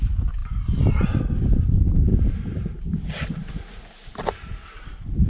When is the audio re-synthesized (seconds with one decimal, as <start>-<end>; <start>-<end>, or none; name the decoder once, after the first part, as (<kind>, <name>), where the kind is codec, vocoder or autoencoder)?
none